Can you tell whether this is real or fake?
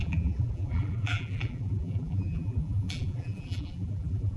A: fake